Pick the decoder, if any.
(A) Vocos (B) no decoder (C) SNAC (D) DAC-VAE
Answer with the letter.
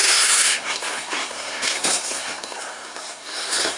C